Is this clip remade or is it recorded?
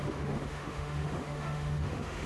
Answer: remade